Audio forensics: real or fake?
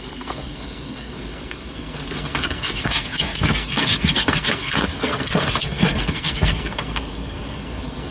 fake